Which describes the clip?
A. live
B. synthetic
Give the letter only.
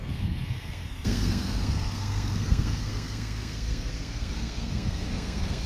B